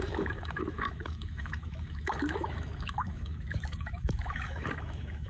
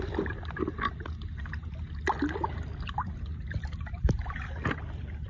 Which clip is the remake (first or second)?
first